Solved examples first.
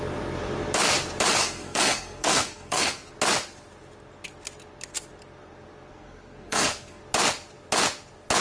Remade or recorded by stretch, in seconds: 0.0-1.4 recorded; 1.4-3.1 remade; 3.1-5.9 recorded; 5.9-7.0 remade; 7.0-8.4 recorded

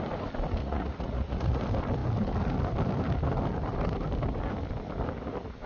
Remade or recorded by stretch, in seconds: 0.0-0.6 recorded; 0.6-1.6 remade; 1.6-5.7 recorded

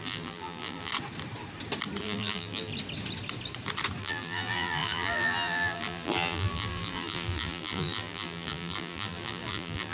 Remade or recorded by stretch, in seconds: 0.0-0.9 remade; 0.9-2.0 recorded; 2.0-2.7 remade; 2.7-4.0 recorded; 4.0-9.9 remade

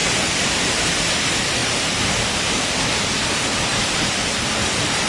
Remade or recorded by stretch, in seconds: 0.0-1.6 remade; 1.6-2.5 recorded; 2.5-5.1 remade

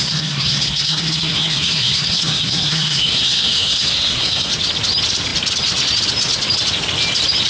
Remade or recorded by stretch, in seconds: 0.0-4.5 remade; 4.5-7.5 recorded

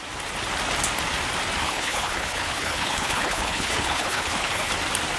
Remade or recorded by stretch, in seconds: 0.0-1.6 recorded; 1.6-4.7 remade; 4.7-5.2 recorded

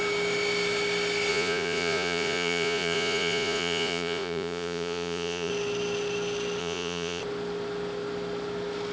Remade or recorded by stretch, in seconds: 0.0-1.3 recorded; 1.3-5.5 remade; 5.5-6.6 recorded; 6.6-7.2 remade; 7.2-8.9 recorded